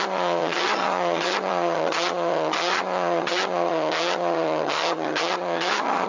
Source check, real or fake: fake